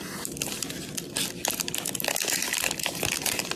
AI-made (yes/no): no